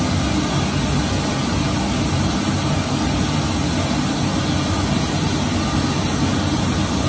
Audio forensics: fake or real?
real